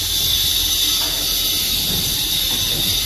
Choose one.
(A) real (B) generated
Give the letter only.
A